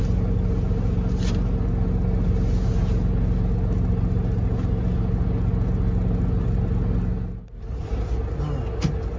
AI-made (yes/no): no